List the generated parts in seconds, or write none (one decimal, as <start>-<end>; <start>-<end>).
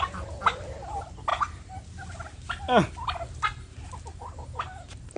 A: none